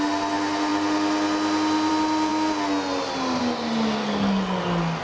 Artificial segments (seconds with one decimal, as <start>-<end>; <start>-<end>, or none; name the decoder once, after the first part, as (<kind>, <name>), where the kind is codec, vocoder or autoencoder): 4.0-4.6 (codec, DAC)